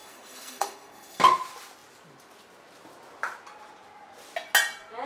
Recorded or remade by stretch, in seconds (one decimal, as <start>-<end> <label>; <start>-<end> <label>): 0.0-1.2 remade; 1.2-5.1 recorded

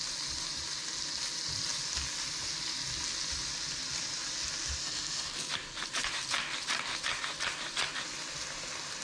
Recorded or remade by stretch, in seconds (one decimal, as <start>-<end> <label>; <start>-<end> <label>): 0.0-4.8 recorded; 4.8-5.5 remade; 5.5-9.0 recorded